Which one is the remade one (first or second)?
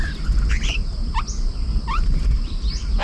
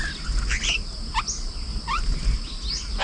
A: first